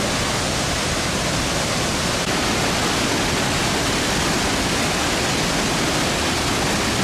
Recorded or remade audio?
recorded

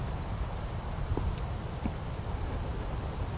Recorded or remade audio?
recorded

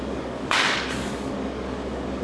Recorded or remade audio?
remade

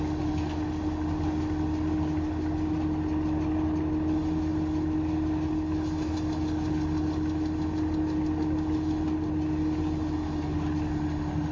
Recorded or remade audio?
recorded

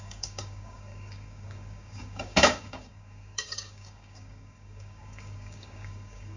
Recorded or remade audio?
remade